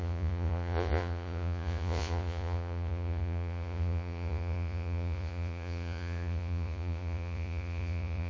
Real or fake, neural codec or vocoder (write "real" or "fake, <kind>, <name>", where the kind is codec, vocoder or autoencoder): fake, vocoder, Vocos